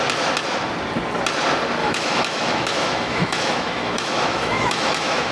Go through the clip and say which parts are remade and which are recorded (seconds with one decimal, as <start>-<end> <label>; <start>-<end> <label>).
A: 0.0-1.8 recorded; 1.8-5.3 remade